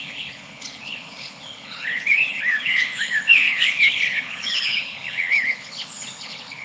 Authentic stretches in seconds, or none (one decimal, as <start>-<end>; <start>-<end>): none